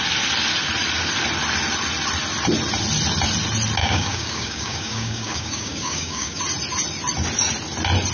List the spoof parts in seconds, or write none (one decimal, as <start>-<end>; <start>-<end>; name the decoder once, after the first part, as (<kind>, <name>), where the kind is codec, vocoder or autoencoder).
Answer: 3.8-6.4 (codec, DAC)